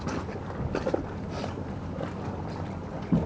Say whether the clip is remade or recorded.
recorded